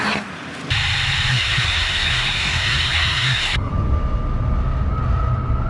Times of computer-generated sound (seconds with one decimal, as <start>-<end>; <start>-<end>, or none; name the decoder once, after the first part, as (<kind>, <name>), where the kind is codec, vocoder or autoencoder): 1.3-3.7 (codec, SNAC)